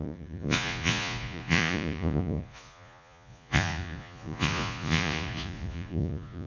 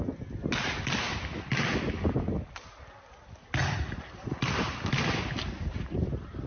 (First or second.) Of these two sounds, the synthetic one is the first